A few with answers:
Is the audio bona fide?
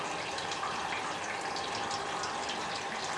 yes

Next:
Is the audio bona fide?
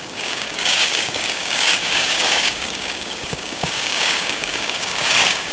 no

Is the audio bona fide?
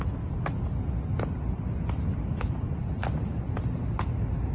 yes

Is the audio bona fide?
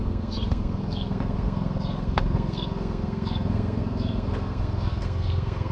no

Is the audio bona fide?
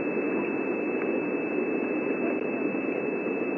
yes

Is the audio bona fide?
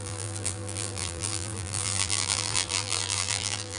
no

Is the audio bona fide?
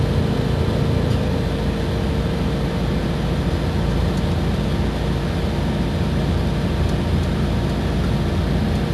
yes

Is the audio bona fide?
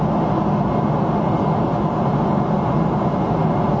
yes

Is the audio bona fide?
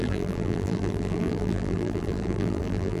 no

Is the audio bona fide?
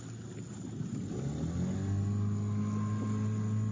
yes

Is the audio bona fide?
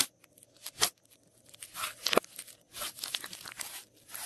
yes